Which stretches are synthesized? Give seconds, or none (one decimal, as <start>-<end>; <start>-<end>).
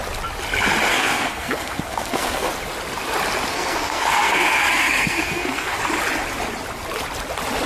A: 0.9-2.5; 3.5-5.8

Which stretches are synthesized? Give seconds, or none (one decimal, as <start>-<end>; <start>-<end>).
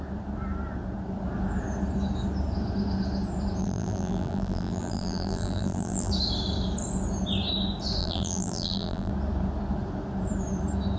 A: 3.6-6.1; 8.0-9.1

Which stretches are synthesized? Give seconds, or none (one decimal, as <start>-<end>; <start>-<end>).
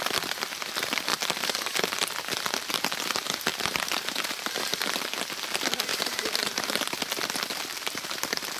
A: 3.5-4.6; 5.9-6.8